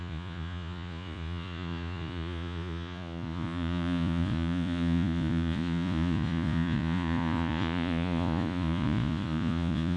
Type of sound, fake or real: fake